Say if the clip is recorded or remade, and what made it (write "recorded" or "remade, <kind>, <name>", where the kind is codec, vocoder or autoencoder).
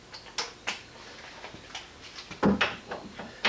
recorded